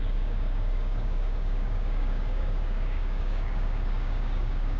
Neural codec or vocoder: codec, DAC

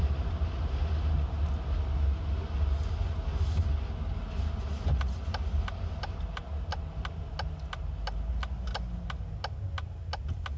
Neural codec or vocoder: none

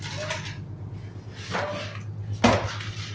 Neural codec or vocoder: none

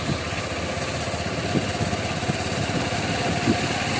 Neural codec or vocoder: none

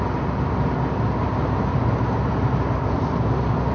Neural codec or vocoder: none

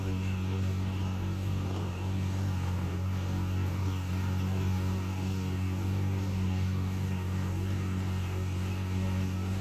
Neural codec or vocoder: codec, DAC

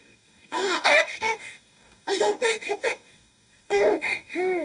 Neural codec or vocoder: codec, DAC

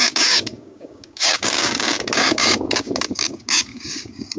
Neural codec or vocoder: codec, DAC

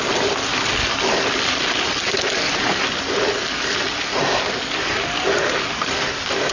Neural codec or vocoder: none